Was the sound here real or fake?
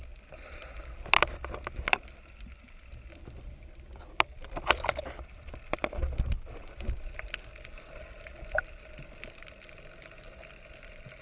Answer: real